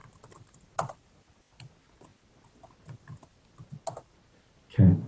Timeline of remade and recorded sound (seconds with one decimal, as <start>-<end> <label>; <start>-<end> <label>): 0.0-1.3 remade; 1.3-5.1 recorded